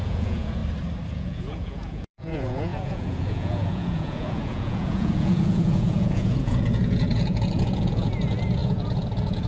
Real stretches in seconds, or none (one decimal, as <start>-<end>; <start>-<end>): 0.6-1.1